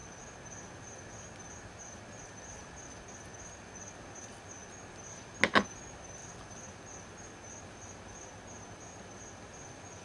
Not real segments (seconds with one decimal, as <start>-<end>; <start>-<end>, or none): none